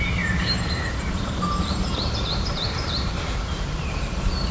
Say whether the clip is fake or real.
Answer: fake